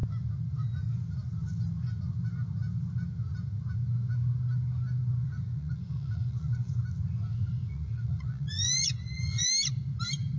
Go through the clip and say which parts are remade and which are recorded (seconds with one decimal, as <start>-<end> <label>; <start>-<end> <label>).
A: 0.0-5.2 recorded; 5.2-6.8 remade; 6.8-7.3 recorded; 7.3-9.5 remade; 9.5-10.4 recorded